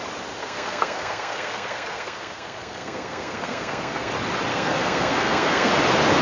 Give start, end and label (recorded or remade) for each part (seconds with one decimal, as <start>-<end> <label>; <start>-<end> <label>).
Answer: 0.0-0.4 recorded; 0.4-4.1 remade; 4.1-4.5 recorded; 4.5-5.7 remade; 5.7-6.2 recorded